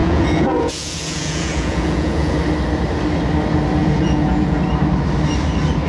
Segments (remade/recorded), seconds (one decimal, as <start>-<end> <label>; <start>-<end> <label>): 0.0-2.4 remade; 2.4-3.8 recorded; 3.8-4.6 remade; 4.6-5.9 recorded